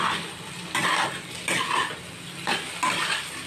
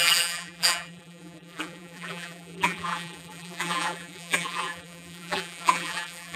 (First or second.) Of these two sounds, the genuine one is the first